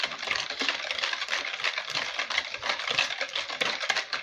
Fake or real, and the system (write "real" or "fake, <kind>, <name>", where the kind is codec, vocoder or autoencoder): real